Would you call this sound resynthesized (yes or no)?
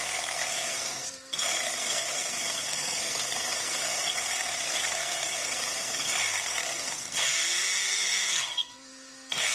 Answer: yes